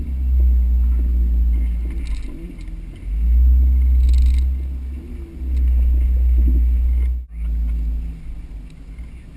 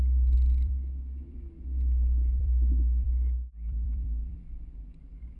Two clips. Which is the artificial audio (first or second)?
second